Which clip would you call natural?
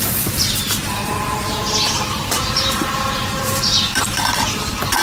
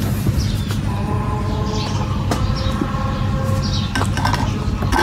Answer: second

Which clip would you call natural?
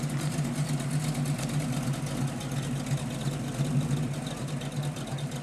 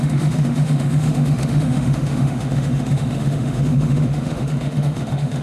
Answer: first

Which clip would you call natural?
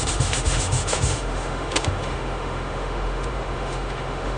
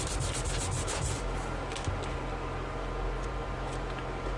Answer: second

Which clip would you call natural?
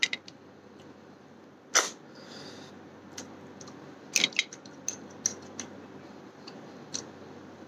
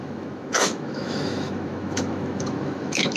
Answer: first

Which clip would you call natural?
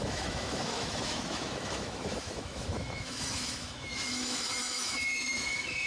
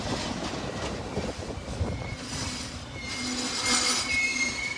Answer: second